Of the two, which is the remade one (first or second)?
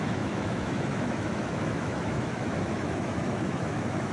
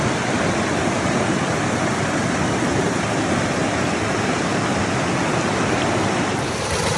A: first